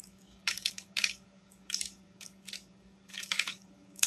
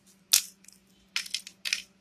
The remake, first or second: first